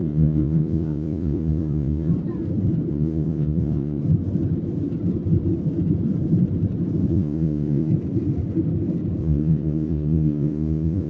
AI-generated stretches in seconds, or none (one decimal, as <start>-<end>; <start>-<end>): 0.0-2.1; 2.9-4.0; 7.1-7.9; 9.2-11.1